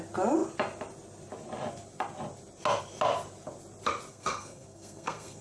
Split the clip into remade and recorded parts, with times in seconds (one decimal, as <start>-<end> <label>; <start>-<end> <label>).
0.0-4.1 recorded; 4.1-5.4 remade